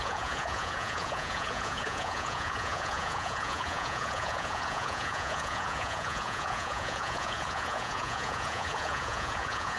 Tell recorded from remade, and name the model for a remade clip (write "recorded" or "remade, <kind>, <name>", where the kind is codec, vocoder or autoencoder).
remade, vocoder, Vocos